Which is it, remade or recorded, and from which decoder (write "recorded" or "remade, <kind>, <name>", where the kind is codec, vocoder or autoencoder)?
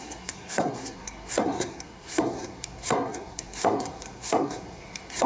remade, codec, SNAC